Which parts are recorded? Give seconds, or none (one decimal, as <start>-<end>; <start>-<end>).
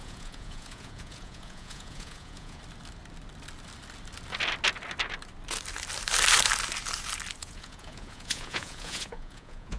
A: 2.6-7.4